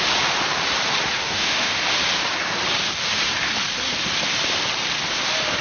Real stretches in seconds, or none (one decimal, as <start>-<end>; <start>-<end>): 0.0-1.2; 1.7-5.6